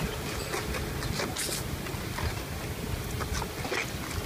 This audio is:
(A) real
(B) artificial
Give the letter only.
A